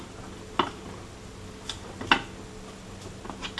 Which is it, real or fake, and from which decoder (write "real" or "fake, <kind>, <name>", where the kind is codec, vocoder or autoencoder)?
real